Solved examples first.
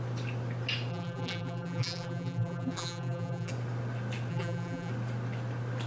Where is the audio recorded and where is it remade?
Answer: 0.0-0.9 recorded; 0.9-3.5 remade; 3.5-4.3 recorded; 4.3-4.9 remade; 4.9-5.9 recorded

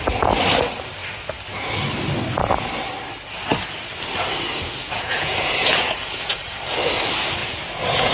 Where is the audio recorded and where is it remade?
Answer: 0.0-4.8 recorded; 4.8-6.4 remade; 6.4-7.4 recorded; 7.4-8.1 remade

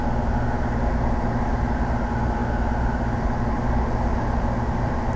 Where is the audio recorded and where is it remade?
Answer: 0.0-5.2 recorded

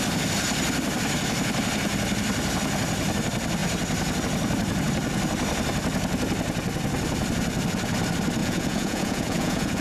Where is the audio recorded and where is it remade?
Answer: 0.0-8.4 recorded; 8.4-9.8 remade

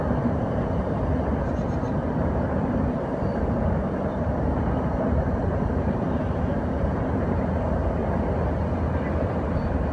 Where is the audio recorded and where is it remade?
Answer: 0.0-8.0 remade; 8.0-9.2 recorded; 9.2-9.9 remade

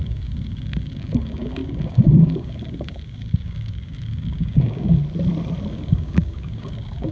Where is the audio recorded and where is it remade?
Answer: 0.0-5.0 remade; 5.0-5.7 recorded; 5.7-7.1 remade

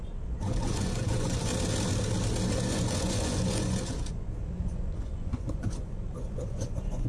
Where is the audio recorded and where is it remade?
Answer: 0.0-1.5 remade; 1.5-2.5 recorded; 2.5-7.1 remade